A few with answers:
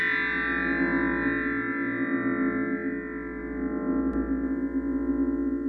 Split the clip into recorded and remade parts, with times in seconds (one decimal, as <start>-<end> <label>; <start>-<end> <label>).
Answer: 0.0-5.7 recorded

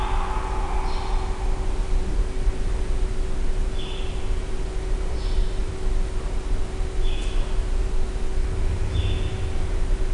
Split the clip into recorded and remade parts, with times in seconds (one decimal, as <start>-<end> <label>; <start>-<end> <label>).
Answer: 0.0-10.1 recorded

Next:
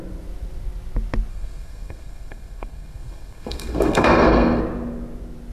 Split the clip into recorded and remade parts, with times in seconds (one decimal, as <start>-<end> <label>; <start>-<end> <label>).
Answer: 0.0-1.3 recorded; 1.3-4.6 remade; 4.6-5.5 recorded

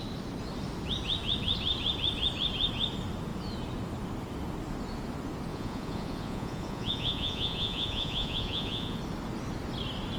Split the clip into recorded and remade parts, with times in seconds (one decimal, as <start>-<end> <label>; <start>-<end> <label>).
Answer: 0.0-5.5 recorded; 5.5-9.0 remade; 9.0-10.2 recorded